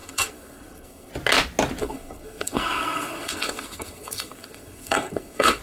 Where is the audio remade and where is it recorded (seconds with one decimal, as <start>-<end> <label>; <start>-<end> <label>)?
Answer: 0.0-1.1 remade; 1.1-1.8 recorded; 1.8-5.6 remade

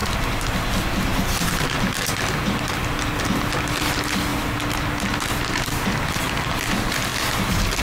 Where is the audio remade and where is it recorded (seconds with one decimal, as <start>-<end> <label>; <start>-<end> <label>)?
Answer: 0.0-7.8 recorded

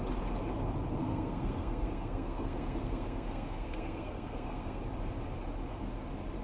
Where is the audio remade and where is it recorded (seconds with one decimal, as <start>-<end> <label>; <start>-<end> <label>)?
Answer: 0.0-1.0 recorded; 1.0-4.8 remade; 4.8-6.4 recorded

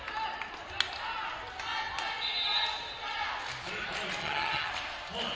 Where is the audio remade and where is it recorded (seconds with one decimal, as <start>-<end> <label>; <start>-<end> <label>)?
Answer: 0.0-4.2 recorded; 4.2-4.7 remade; 4.7-5.4 recorded

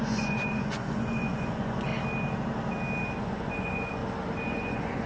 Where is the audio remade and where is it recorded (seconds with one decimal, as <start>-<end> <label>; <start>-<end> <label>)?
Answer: 0.0-1.9 remade; 1.9-3.2 recorded; 3.2-4.0 remade; 4.0-4.5 recorded; 4.5-5.1 remade

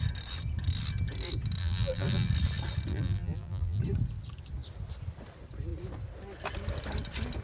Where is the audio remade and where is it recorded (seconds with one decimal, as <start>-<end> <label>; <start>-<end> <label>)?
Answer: 0.0-1.6 recorded; 1.6-2.3 remade; 2.3-2.9 recorded; 2.9-3.8 remade; 3.8-7.4 recorded